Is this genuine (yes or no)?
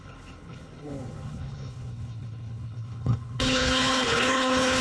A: no